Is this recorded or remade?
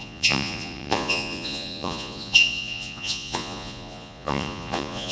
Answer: remade